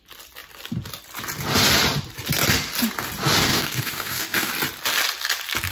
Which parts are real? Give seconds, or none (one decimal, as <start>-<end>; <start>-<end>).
0.0-3.4; 4.5-5.7